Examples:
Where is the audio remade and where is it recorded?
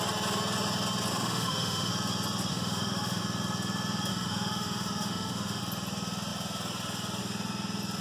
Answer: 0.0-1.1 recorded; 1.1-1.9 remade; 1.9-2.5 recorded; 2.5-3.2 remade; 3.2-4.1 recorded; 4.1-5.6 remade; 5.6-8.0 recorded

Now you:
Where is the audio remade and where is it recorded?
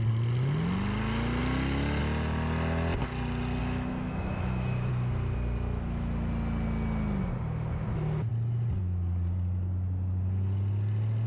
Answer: 0.0-3.6 recorded; 3.6-4.9 remade; 4.9-11.3 recorded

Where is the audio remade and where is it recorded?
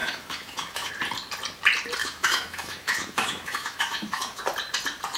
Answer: 0.0-0.9 remade; 0.9-2.0 recorded; 2.0-4.4 remade; 4.4-5.2 recorded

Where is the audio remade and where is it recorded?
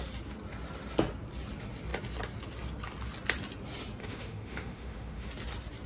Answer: 0.0-4.0 recorded; 4.0-5.3 remade; 5.3-5.9 recorded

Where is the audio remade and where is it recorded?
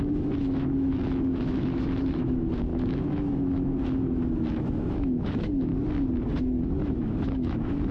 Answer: 0.0-5.7 remade; 5.7-6.9 recorded; 6.9-7.9 remade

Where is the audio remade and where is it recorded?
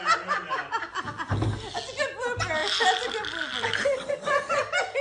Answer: 0.0-5.0 recorded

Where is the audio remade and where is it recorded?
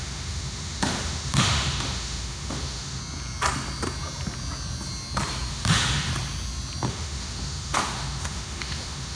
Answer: 0.0-3.0 remade; 3.0-5.5 recorded; 5.5-6.1 remade; 6.1-6.9 recorded; 6.9-9.2 remade